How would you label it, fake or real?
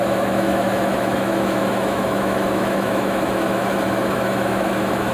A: fake